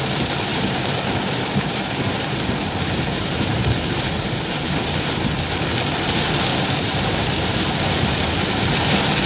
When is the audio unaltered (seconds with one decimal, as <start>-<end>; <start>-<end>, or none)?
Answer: 0.0-0.5; 5.3-6.5; 8.1-9.3